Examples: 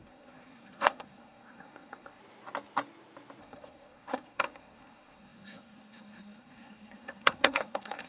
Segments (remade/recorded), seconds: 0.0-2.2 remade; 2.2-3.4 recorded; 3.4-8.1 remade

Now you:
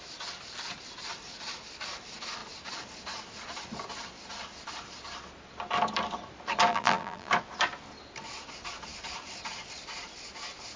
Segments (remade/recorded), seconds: 0.0-6.7 recorded; 6.7-7.3 remade; 7.3-10.8 recorded